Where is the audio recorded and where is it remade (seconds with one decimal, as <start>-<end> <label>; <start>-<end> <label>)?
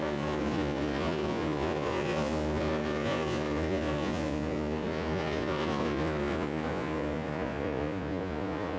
0.0-8.8 remade